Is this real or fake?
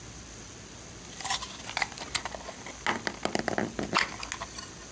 real